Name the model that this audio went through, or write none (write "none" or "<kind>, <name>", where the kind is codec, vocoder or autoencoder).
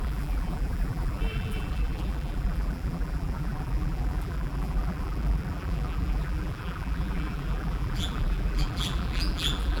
vocoder, BigVGAN v2